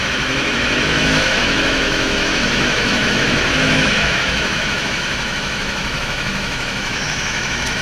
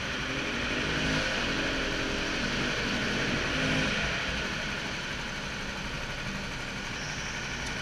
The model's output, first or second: first